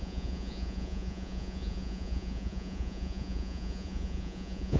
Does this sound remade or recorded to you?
remade